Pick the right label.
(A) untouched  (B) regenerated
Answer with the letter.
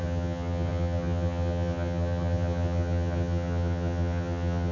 B